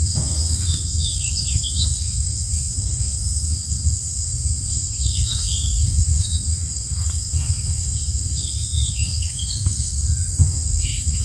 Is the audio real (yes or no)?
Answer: no